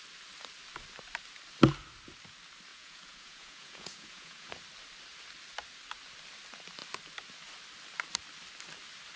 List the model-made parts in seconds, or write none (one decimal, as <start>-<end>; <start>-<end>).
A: 2.7-4.5